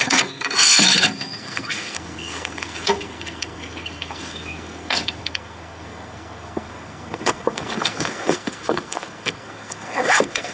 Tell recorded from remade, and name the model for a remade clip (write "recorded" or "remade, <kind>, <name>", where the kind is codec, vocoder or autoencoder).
remade, codec, SNAC